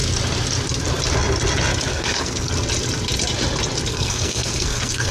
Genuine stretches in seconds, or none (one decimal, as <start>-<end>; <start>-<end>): 0.0-1.9; 2.5-3.9